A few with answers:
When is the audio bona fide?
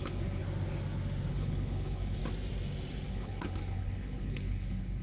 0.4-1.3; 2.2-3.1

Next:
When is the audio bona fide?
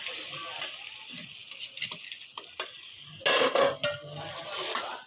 0.0-5.1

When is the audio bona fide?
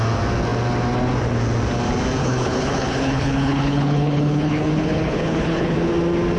0.0-2.2; 5.9-6.4